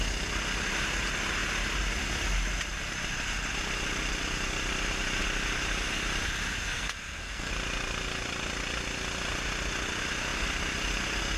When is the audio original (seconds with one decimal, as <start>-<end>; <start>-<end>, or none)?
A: 0.0-6.6; 7.5-11.4